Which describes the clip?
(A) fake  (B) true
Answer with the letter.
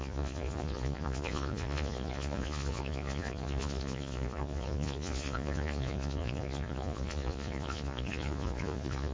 A